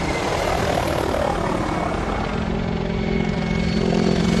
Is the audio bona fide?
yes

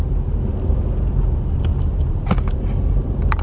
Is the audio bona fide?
yes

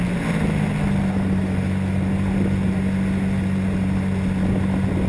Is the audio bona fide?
yes